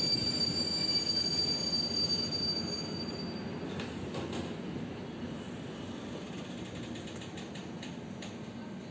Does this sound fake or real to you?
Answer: real